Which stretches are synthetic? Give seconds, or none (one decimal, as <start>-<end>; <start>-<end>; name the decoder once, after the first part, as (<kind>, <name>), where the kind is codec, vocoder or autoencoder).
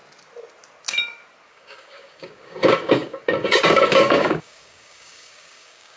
1.5-6.0 (codec, DAC)